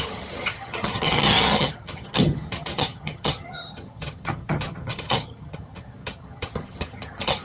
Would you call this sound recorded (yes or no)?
no